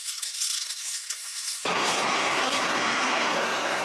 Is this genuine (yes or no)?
no